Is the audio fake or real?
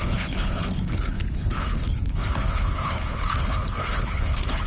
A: fake